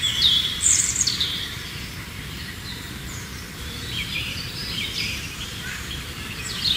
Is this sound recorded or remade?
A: remade